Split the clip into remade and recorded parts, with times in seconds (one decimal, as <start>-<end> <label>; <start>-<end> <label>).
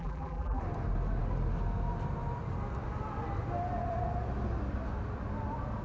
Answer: 0.0-0.6 remade; 0.6-5.8 recorded